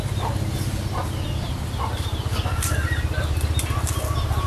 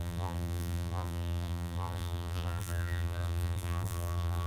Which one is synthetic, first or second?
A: second